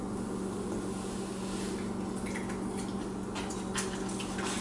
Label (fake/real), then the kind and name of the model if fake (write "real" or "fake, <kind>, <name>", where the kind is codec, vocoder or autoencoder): real